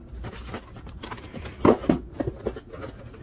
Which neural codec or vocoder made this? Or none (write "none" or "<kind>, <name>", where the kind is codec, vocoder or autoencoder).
none